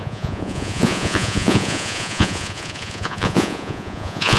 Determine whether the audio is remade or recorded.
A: remade